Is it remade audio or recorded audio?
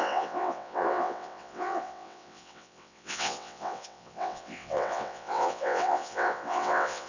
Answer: remade